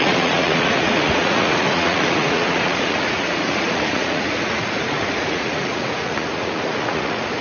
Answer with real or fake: fake